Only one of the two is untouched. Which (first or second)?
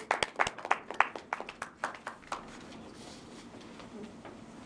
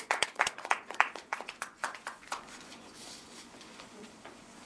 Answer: first